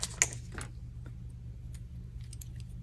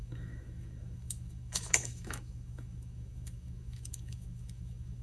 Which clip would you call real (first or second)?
first